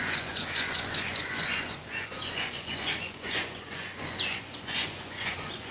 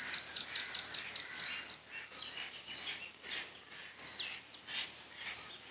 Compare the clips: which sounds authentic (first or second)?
second